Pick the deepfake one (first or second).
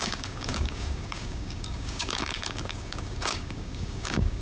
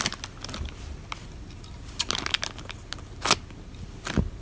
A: first